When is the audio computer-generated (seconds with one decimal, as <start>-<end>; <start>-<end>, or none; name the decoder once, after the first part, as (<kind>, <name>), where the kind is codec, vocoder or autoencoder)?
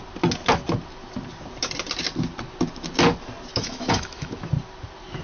3.5-4.3 (autoencoder, DAC-VAE)